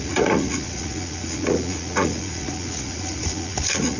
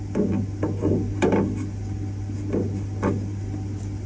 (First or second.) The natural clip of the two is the second